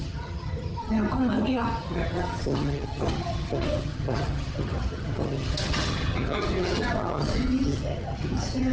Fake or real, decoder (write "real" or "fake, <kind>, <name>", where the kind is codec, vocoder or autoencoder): fake, vocoder, HiFi-GAN